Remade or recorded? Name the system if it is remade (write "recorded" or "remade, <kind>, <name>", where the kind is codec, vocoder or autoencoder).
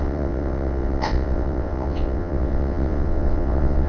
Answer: remade, vocoder, WaveNeXt